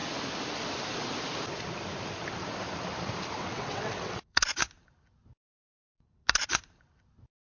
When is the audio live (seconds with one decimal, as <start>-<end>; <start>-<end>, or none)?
0.0-3.4; 4.4-7.5